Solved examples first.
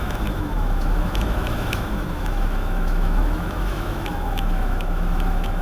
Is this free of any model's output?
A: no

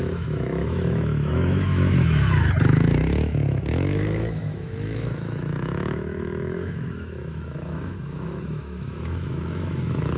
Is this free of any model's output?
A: no